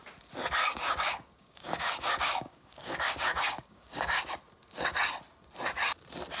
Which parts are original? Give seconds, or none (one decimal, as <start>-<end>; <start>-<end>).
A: 0.0-0.6; 4.2-6.4